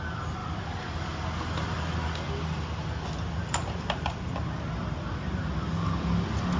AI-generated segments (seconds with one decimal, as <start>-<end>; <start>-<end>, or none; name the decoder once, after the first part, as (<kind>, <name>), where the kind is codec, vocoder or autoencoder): none